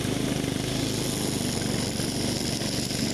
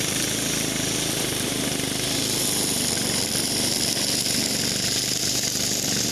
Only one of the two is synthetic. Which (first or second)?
second